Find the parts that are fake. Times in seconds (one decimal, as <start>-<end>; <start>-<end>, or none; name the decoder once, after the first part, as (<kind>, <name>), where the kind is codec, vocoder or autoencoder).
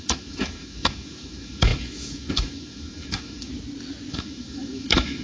0.0-3.5 (autoencoder, DAC-VAE); 4.1-5.2